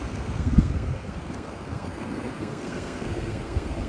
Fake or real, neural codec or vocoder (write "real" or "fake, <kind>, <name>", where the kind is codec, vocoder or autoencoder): fake, codec, SNAC